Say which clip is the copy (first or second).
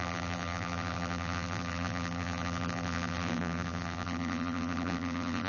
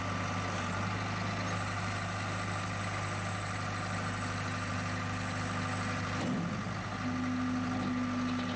first